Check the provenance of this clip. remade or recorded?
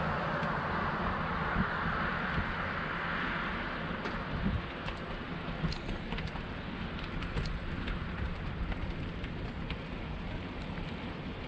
recorded